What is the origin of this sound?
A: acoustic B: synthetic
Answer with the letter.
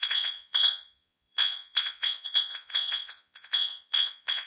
B